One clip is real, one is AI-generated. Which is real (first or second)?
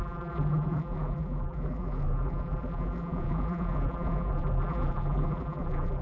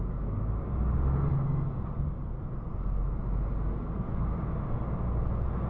second